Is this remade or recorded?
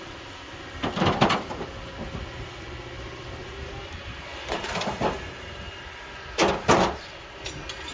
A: recorded